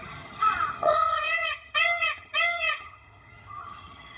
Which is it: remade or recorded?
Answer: remade